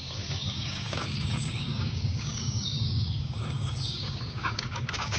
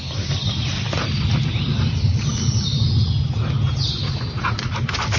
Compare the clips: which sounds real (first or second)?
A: second